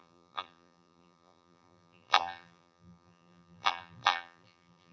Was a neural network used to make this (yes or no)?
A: yes